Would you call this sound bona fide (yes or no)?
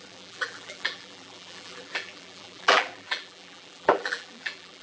no